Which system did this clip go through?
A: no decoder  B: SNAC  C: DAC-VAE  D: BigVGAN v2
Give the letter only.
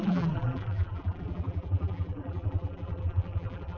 D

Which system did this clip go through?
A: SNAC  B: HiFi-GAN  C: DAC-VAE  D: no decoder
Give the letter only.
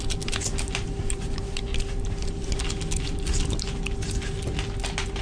D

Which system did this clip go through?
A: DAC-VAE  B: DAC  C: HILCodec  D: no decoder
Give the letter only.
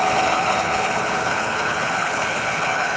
C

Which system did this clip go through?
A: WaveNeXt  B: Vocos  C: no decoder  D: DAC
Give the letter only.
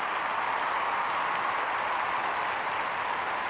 C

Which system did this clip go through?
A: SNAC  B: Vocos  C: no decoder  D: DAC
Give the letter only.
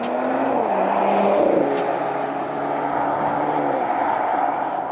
C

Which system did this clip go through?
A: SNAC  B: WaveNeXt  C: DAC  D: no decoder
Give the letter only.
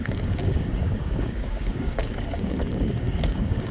C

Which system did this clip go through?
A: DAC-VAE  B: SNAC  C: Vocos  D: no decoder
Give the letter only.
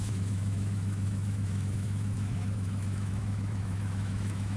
A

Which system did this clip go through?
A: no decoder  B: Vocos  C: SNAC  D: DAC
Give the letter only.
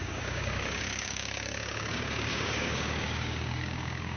D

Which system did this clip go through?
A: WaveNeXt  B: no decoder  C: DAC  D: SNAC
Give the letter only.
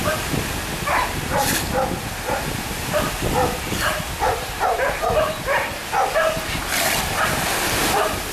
B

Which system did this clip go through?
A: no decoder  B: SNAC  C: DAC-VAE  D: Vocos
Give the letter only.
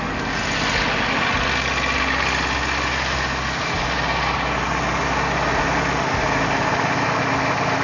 A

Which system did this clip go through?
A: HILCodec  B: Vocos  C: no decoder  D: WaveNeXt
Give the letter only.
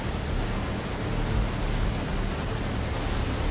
C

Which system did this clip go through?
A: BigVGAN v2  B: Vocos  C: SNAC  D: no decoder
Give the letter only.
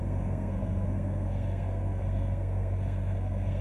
C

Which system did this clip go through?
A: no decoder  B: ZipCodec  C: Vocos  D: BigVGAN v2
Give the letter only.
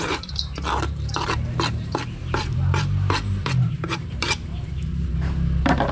D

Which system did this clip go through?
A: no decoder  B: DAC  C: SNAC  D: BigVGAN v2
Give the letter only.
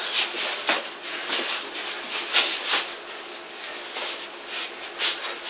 A